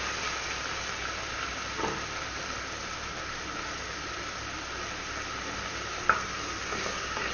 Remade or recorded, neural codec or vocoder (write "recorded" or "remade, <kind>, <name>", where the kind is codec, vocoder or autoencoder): recorded